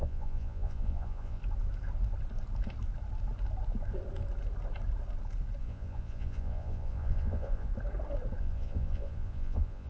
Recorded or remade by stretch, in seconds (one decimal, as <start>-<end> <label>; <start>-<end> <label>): 0.0-1.4 remade; 1.4-5.6 recorded; 5.6-7.7 remade; 7.7-8.4 recorded; 8.4-9.9 remade